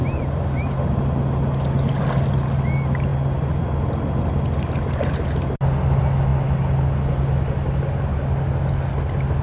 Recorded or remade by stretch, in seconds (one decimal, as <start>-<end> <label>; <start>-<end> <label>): 0.0-9.4 recorded